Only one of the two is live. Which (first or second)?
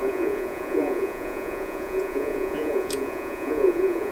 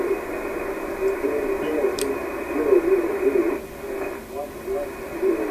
second